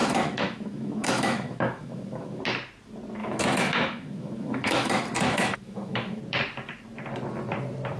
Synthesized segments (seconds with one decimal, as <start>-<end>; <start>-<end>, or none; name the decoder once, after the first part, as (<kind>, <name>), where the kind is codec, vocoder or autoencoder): 0.0-2.4 (autoencoder, DAC-VAE); 3.2-6.2